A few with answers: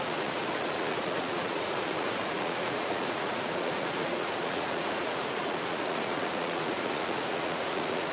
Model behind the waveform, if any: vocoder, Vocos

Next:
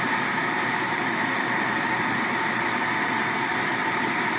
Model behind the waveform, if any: vocoder, BigVGAN v2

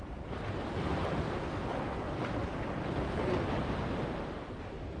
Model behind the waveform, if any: none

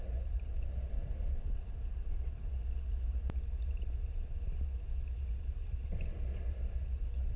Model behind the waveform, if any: none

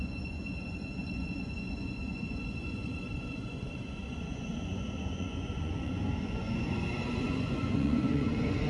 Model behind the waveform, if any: vocoder, Vocos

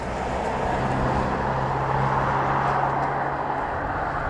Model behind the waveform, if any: none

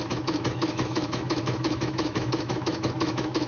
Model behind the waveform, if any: autoencoder, DAC-VAE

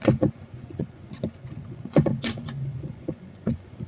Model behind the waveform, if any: vocoder, Vocos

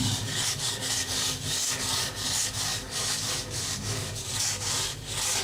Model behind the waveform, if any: codec, DAC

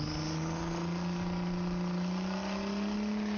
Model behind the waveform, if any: none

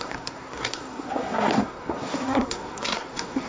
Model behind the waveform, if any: codec, SNAC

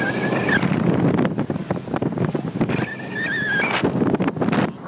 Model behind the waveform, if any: none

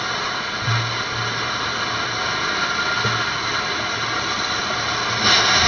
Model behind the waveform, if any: none